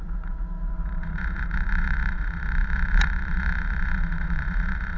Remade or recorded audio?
remade